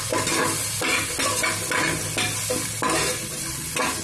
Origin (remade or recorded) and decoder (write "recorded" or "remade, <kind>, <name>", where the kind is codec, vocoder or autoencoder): recorded